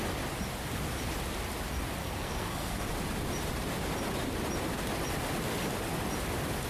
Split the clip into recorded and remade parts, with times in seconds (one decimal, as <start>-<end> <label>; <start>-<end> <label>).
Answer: 0.0-2.0 recorded; 2.0-2.9 remade; 2.9-6.7 recorded